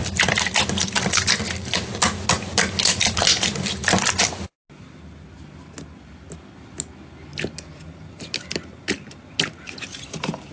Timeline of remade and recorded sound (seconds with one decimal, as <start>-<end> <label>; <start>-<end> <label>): 0.0-10.5 recorded